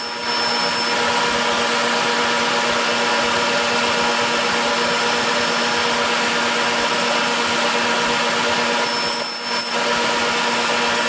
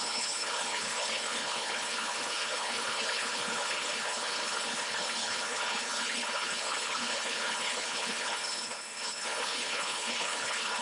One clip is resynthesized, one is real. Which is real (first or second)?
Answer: first